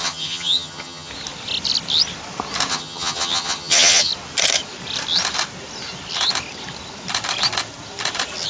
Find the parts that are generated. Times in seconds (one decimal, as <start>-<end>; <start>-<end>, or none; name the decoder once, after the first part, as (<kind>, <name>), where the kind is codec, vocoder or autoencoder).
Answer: 0.0-1.1 (vocoder, HiFi-GAN); 2.7-4.1